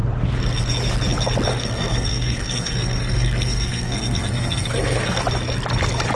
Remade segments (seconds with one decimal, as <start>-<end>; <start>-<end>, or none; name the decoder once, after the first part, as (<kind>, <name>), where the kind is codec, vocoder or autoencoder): 1.5-5.2 (codec, SNAC)